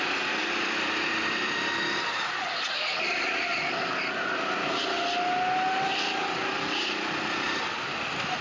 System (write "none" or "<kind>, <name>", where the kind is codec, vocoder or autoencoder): none